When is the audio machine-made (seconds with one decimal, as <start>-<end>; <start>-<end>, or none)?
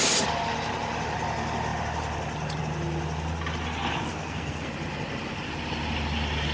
4.1-4.7